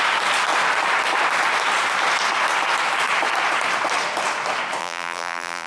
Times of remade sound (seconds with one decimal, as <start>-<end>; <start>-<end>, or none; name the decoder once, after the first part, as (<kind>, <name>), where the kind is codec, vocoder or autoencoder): 4.8-5.7 (vocoder, BigVGAN v2)